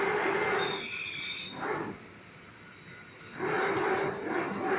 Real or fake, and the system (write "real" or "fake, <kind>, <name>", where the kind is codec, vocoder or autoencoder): real